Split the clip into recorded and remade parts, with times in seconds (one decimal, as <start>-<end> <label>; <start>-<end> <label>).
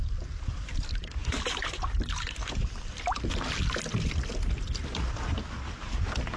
0.0-6.4 recorded